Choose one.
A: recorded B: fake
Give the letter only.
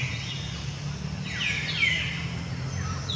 A